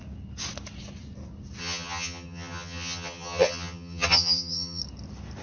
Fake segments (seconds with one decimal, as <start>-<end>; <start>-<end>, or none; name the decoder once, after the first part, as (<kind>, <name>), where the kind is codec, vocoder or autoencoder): 1.6-4.8 (vocoder, HiFi-GAN)